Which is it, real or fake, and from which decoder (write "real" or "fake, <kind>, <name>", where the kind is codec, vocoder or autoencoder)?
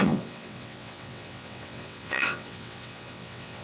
fake, vocoder, WaveNeXt